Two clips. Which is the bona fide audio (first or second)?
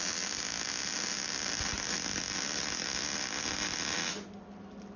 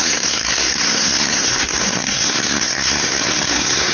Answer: first